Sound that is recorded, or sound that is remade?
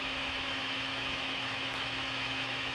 remade